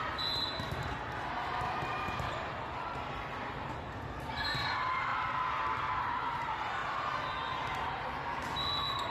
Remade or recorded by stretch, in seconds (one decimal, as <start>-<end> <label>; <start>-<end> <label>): 0.0-5.1 remade; 5.1-6.0 recorded; 6.0-6.8 remade; 6.8-7.5 recorded; 7.5-9.1 remade